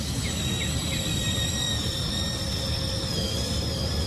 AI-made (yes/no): yes